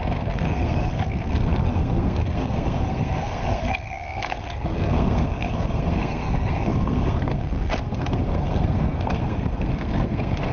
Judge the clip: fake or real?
fake